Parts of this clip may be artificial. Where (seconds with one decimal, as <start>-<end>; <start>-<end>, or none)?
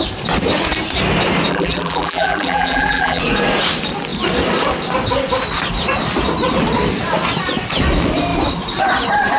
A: 1.5-3.2